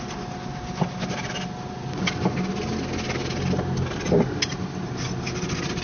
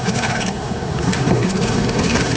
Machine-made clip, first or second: second